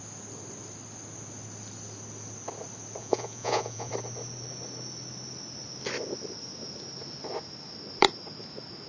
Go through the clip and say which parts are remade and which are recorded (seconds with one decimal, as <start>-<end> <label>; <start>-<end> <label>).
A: 0.0-3.0 recorded; 3.0-3.9 remade; 3.9-8.9 recorded

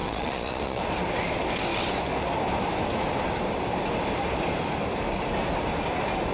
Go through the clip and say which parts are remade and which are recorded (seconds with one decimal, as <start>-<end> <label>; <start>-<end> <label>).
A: 0.0-0.8 remade; 0.8-6.3 recorded

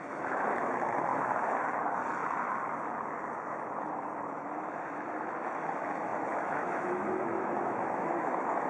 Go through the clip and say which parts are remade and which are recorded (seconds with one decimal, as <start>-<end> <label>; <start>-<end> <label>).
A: 0.0-1.1 remade; 1.1-3.4 recorded; 3.4-8.7 remade